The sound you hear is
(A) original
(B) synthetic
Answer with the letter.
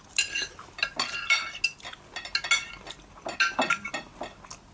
A